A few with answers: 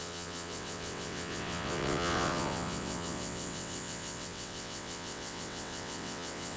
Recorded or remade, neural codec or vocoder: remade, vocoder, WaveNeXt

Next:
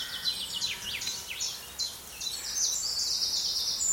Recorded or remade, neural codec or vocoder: recorded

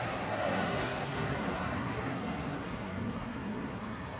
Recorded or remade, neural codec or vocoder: remade, codec, SNAC